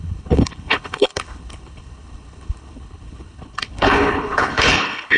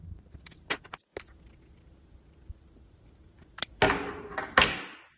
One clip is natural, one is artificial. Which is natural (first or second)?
second